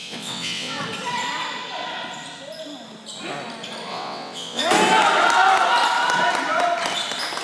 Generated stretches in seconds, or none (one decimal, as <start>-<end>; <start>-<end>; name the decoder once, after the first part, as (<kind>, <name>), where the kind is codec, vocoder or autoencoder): 0.0-0.8 (vocoder, WaveNeXt); 3.9-4.6